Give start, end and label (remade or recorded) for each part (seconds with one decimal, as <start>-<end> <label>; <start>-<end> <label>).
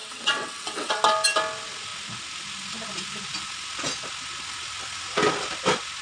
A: 0.0-1.0 remade; 1.0-6.0 recorded